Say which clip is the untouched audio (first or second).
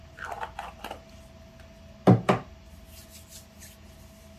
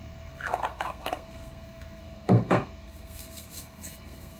first